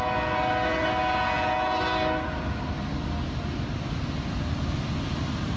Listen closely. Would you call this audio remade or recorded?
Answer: recorded